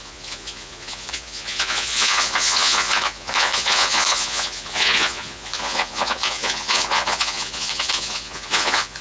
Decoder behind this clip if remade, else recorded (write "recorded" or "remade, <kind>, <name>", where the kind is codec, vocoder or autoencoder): remade, vocoder, Vocos